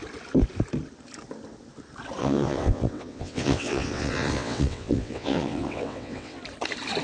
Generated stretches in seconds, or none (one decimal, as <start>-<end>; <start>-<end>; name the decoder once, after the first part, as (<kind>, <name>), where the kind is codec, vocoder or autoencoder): 2.2-6.4 (vocoder, WaveNeXt)